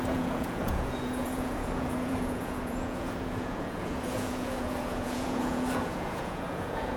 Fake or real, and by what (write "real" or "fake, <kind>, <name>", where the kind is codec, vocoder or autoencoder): fake, vocoder, Vocos